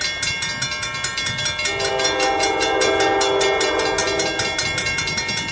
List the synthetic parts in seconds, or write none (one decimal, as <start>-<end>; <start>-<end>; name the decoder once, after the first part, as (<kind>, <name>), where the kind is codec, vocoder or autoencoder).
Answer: none